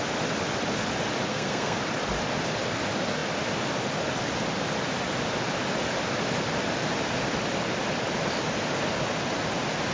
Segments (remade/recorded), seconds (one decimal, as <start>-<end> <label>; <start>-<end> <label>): 0.0-1.3 recorded; 1.3-1.8 remade; 1.8-9.9 recorded